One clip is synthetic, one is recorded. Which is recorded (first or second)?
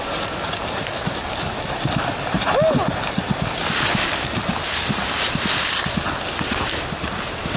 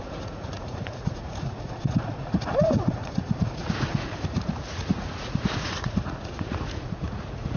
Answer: first